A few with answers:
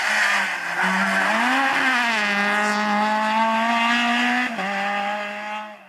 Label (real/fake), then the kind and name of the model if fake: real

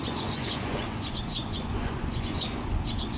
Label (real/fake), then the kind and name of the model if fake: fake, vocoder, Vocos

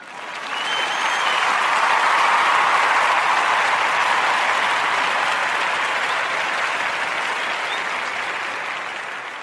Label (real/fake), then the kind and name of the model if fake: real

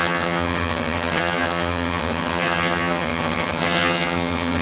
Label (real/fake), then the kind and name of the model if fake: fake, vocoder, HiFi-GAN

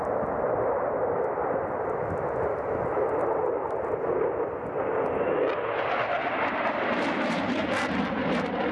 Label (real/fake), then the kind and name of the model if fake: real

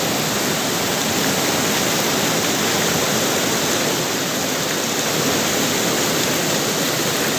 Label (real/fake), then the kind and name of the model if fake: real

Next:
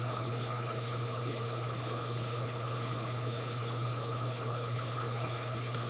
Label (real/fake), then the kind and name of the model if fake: fake, codec, HILCodec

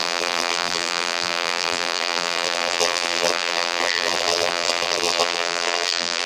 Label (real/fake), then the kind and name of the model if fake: fake, vocoder, BigVGAN v2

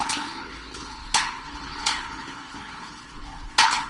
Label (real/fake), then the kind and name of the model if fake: fake, codec, HILCodec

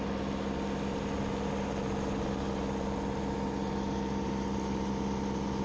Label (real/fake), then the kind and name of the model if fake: real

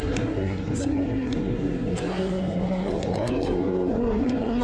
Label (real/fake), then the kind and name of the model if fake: fake, codec, SNAC